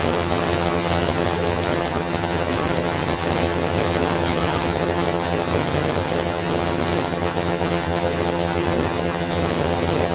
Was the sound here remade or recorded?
remade